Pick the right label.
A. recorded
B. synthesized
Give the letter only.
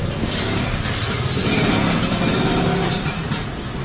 A